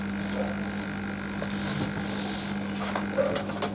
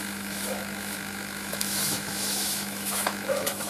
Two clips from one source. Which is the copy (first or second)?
second